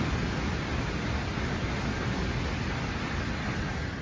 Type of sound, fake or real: real